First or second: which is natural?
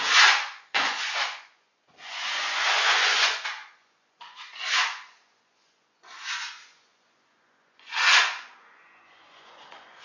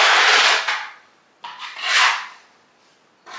second